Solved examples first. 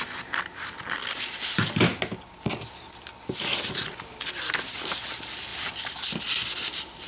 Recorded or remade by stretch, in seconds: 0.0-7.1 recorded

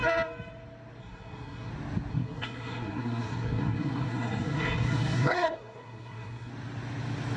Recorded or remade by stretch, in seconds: 0.0-1.0 recorded; 1.0-1.7 remade; 1.7-2.1 recorded; 2.1-6.5 remade; 6.5-7.4 recorded

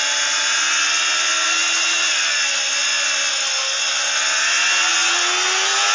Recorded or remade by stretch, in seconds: 0.0-5.9 recorded

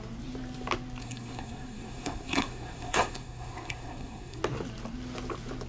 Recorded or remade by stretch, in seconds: 0.0-1.0 recorded; 1.0-4.4 remade; 4.4-5.7 recorded

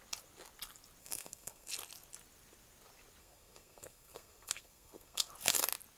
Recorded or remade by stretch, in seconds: 0.0-1.0 recorded; 1.0-1.7 remade; 1.7-3.2 recorded; 3.2-5.3 remade; 5.3-6.0 recorded